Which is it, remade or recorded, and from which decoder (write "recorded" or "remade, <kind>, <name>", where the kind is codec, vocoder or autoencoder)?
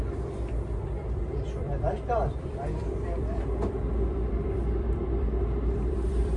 remade, vocoder, BigVGAN v2